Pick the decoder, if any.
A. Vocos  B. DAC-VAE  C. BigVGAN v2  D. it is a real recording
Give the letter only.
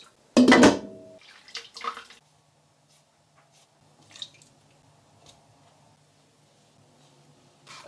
D